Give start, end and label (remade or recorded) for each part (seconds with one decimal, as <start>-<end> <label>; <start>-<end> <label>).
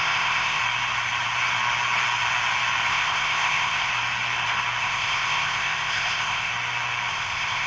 0.0-0.6 remade; 0.6-2.9 recorded; 2.9-3.9 remade; 3.9-4.8 recorded; 4.8-6.5 remade; 6.5-7.1 recorded; 7.1-7.7 remade